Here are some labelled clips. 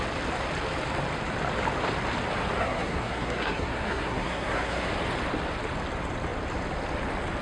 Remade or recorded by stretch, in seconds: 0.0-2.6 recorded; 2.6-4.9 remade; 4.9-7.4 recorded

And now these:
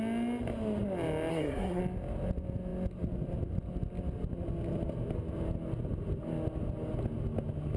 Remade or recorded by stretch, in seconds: 0.0-1.3 recorded; 1.3-1.8 remade; 1.8-7.8 recorded

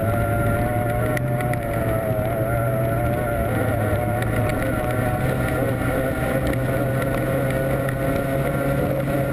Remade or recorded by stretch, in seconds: 0.0-9.3 recorded

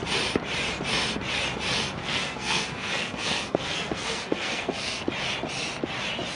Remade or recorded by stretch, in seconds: 0.0-2.0 recorded; 2.0-5.0 remade; 5.0-6.4 recorded